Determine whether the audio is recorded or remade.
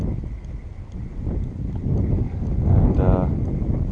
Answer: recorded